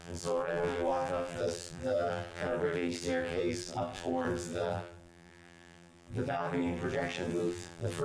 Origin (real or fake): fake